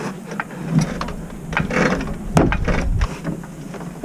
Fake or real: real